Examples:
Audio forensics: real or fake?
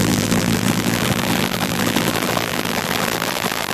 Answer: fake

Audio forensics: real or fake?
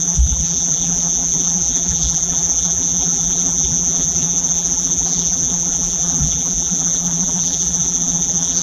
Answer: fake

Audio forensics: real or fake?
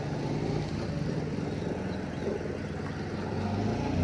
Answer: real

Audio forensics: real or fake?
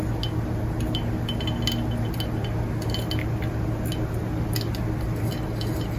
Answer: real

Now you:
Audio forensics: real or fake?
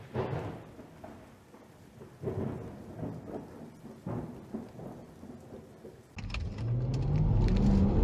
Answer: real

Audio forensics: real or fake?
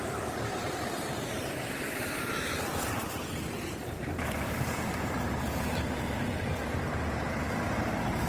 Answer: fake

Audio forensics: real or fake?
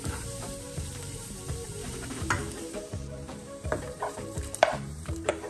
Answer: fake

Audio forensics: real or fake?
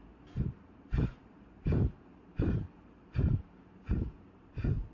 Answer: fake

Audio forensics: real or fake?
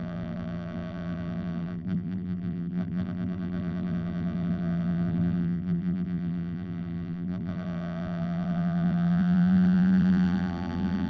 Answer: fake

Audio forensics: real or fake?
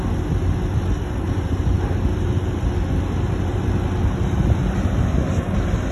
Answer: real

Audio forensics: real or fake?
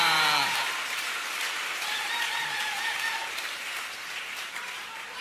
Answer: fake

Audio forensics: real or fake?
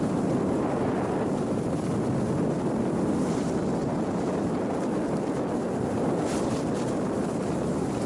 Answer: fake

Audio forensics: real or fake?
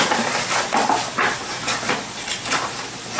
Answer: real